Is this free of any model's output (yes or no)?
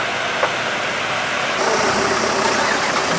yes